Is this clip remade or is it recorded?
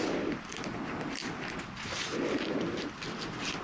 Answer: recorded